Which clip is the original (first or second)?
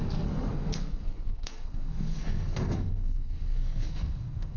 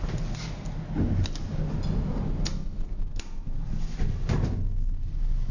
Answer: second